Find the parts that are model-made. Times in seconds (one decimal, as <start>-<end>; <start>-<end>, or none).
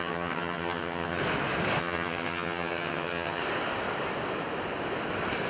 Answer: 0.0-1.2; 1.8-3.4